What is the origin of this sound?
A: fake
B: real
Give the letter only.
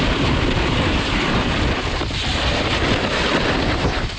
B